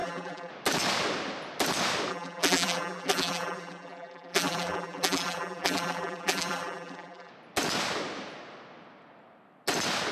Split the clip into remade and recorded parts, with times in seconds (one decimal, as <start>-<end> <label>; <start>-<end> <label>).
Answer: 0.0-0.5 remade; 0.5-2.1 recorded; 2.1-7.3 remade; 7.3-10.1 recorded